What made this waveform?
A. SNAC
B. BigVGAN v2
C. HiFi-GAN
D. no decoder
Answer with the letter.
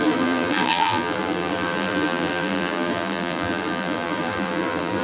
B